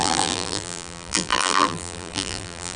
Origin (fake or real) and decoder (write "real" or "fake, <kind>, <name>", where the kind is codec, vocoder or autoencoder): fake, vocoder, BigVGAN v2